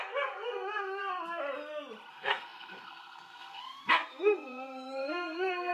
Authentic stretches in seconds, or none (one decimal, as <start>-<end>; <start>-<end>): 1.0-2.1